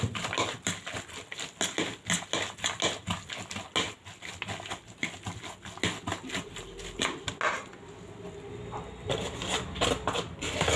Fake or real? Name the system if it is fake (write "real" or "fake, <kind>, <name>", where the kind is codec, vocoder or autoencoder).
real